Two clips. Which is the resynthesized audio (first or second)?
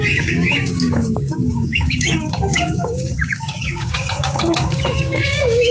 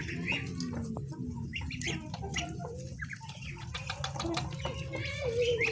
first